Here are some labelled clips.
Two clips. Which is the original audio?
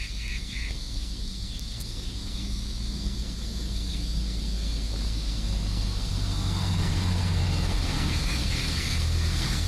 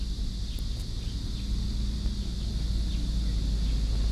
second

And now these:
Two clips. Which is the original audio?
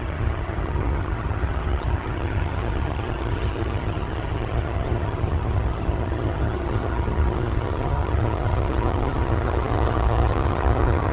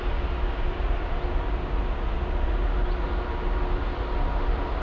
second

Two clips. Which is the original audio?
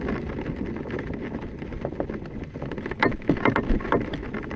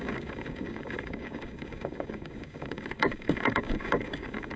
first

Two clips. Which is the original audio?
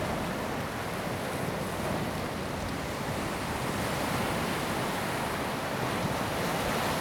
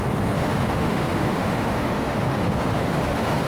first